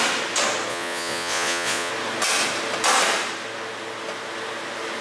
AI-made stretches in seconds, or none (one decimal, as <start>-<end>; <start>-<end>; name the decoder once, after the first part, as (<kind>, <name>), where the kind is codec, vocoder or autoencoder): 0.7-1.9 (vocoder, Vocos)